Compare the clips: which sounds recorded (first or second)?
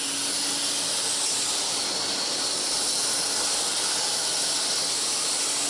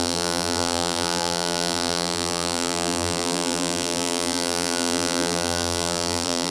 first